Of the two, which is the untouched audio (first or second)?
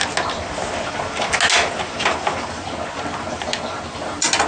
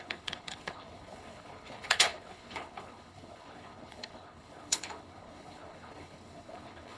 first